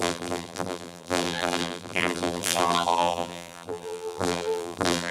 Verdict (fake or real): fake